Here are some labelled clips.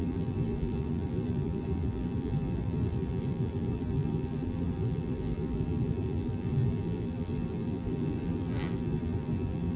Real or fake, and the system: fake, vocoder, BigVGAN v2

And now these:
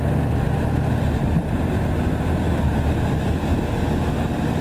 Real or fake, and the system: real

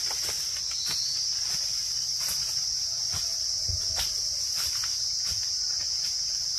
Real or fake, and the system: real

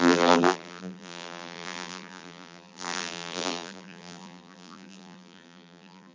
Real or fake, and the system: fake, vocoder, BigVGAN v2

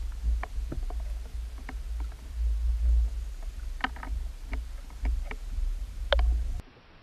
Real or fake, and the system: real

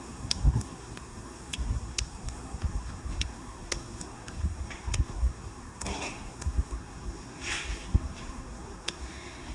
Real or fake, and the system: fake, codec, SNAC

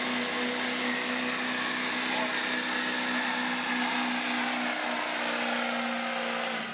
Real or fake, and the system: real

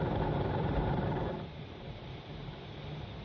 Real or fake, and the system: fake, vocoder, BigVGAN v2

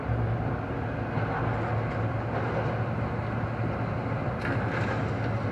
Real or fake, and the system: real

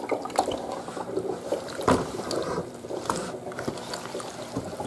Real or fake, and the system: fake, vocoder, BigVGAN v2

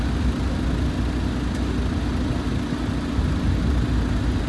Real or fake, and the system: real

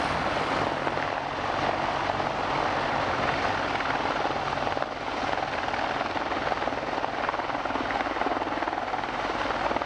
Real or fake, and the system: real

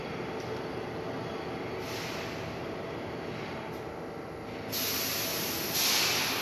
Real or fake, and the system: real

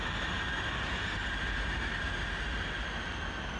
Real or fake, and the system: real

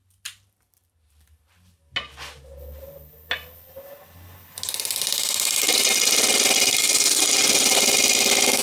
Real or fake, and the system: real